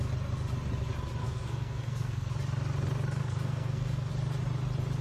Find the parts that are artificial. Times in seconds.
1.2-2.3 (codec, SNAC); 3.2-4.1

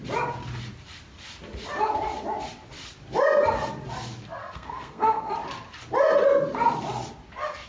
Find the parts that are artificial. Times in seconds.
4.4-5.3 (codec, SNAC)